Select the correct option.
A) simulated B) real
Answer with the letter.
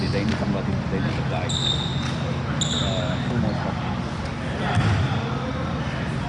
B